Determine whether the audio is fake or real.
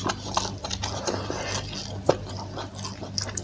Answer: real